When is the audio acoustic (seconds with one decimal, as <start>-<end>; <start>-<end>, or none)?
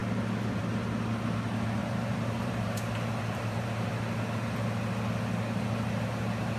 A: 0.0-1.8; 3.9-6.6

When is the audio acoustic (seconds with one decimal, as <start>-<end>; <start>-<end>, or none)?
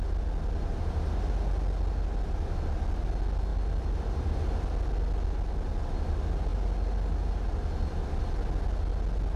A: 0.0-3.5; 5.1-6.5; 8.2-9.4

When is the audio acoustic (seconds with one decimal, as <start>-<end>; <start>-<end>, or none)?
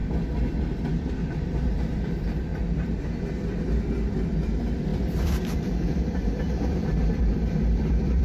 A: 0.0-0.9; 2.5-3.3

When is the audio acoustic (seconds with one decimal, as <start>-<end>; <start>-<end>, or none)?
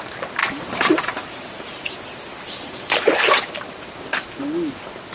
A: 0.0-0.4; 3.5-5.1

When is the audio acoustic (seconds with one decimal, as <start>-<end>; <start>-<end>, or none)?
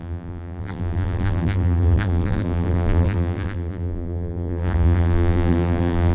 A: none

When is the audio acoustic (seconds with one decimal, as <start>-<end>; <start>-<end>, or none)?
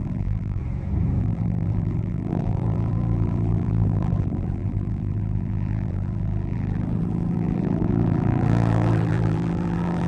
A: 0.6-1.2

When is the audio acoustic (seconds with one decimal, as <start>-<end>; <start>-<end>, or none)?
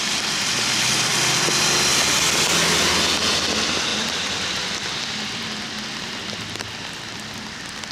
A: 0.0-3.9; 5.0-7.9